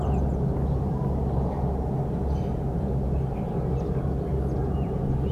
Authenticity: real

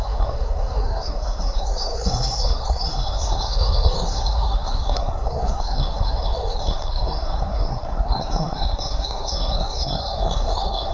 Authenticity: fake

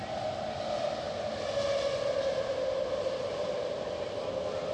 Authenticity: real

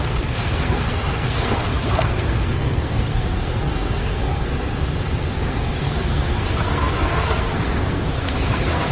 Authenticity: fake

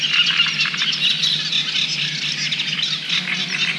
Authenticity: real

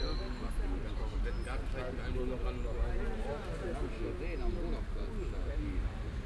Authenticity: real